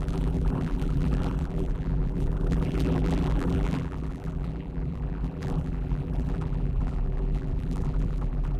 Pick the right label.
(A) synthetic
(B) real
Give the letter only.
A